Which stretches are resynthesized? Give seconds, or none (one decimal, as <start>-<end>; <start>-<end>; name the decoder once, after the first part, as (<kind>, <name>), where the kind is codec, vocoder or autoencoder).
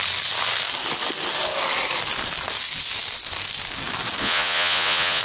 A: 4.2-5.2 (vocoder, Vocos)